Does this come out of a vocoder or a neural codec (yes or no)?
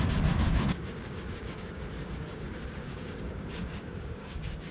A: yes